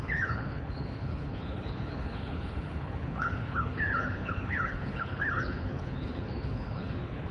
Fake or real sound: fake